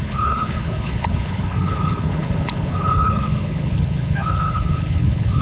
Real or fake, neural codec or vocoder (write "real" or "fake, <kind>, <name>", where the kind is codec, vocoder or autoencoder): fake, codec, HILCodec